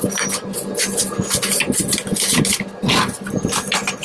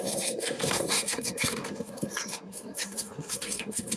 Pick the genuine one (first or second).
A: first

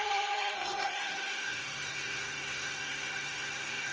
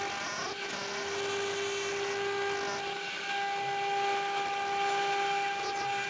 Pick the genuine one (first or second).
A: second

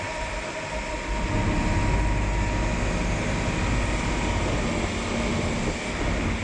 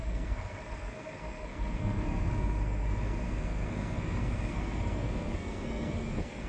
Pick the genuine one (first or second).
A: first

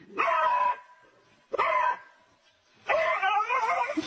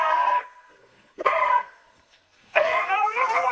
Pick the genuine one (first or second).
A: first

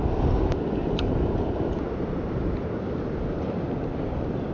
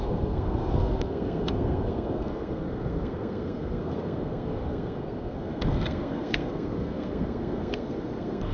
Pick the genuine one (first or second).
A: first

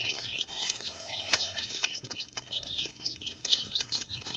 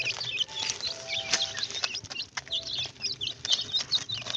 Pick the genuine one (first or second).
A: second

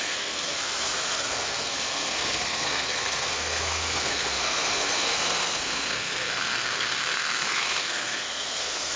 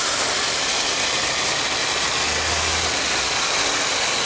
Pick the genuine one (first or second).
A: second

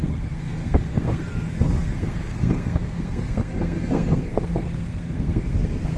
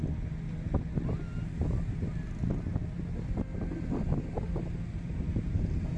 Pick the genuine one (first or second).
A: second